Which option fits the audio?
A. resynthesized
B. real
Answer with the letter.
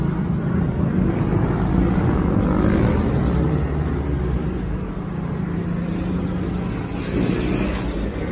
B